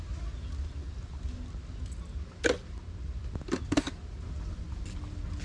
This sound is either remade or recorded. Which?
recorded